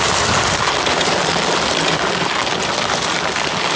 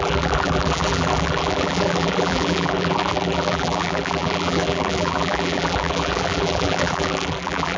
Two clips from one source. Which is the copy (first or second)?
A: second